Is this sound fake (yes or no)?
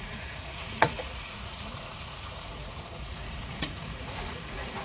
yes